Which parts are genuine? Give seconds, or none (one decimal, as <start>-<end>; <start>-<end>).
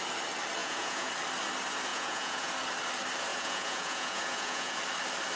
0.0-0.6; 1.1-1.9; 2.5-3.3; 4.8-5.4